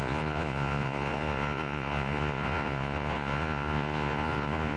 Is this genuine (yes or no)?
no